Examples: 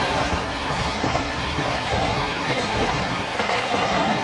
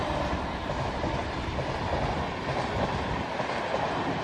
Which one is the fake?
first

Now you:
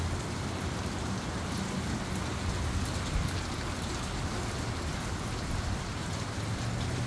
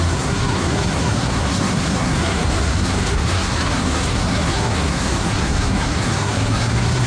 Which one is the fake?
second